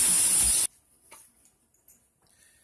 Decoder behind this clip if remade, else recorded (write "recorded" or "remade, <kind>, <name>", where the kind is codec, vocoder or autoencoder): recorded